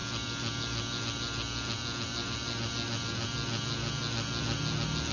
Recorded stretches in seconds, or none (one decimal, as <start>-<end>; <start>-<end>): 0.0-5.1